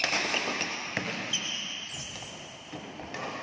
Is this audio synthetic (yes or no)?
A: no